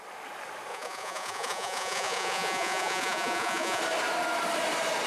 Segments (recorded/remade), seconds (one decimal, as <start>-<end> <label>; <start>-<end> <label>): 0.0-0.7 recorded; 0.7-3.8 remade; 3.8-5.1 recorded